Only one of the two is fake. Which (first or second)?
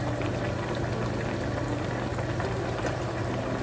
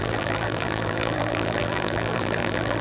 second